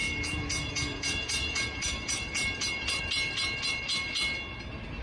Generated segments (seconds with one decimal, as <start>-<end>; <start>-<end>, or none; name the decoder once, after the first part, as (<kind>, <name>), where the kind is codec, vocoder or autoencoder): 0.0-3.0 (vocoder, Vocos)